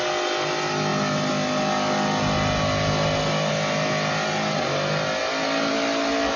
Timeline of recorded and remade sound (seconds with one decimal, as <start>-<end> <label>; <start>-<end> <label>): 0.0-6.4 recorded

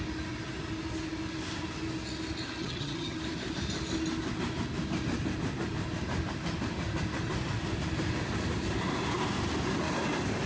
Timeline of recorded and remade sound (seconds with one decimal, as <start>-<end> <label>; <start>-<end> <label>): 0.0-2.6 recorded; 2.6-3.2 remade; 3.2-10.5 recorded

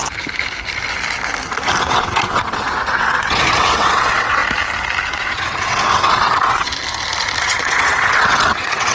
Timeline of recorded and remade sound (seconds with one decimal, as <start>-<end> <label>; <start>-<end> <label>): 0.0-1.8 recorded; 1.8-4.4 remade; 4.4-5.1 recorded; 5.1-6.7 remade; 6.7-7.4 recorded; 7.4-8.9 remade

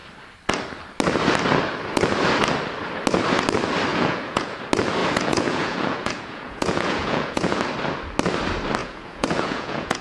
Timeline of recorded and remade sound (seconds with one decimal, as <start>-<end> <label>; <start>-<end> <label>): 0.0-3.9 recorded; 3.9-4.6 remade; 4.6-5.0 recorded; 5.0-7.6 remade; 7.6-8.8 recorded; 8.8-10.0 remade

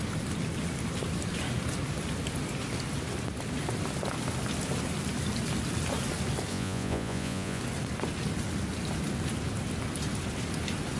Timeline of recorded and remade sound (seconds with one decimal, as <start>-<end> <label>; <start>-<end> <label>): 0.0-6.5 recorded; 6.5-7.6 remade; 7.6-11.0 recorded

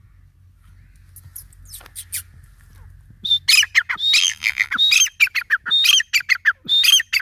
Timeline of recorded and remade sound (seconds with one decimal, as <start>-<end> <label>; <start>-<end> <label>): 0.0-4.2 recorded; 4.2-4.7 remade; 4.7-7.2 recorded

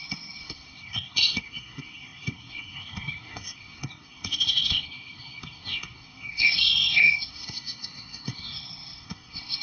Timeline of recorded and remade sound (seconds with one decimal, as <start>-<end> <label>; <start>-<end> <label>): 0.0-9.6 remade